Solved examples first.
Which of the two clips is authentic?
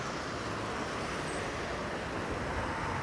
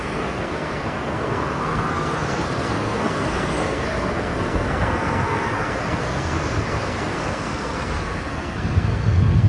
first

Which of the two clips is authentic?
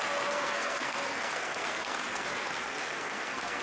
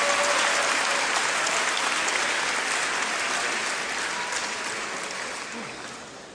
second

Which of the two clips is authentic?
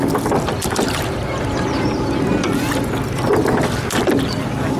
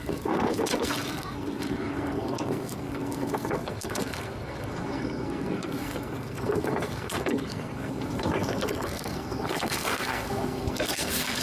first